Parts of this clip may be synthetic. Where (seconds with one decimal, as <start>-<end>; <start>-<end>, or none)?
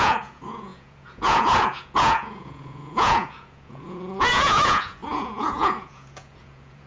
0.0-6.9